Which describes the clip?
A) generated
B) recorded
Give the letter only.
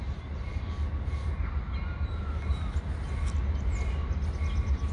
B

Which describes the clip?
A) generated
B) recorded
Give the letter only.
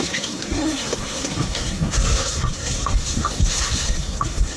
A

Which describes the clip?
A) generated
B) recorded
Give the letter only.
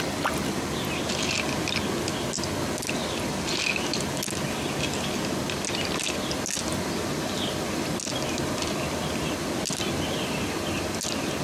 B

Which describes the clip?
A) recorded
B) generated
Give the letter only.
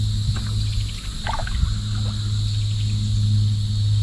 A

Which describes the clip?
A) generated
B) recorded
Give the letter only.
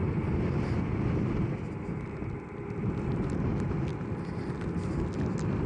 B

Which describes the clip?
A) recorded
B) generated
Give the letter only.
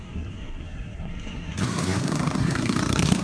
B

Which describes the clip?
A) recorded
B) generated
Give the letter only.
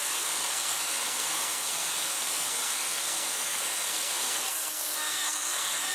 B